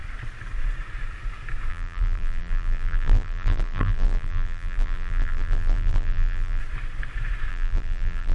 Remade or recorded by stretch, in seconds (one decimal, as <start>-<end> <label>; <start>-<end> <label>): 0.0-1.7 recorded; 1.7-6.6 remade; 6.6-7.5 recorded; 7.5-8.3 remade